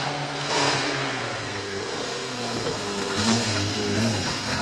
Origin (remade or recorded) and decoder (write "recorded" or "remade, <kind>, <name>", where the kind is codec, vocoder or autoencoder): remade, codec, SNAC